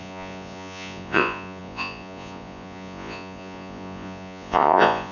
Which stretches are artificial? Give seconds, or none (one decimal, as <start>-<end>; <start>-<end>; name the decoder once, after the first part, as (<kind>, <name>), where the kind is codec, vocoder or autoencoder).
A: 0.0-5.1 (vocoder, Vocos)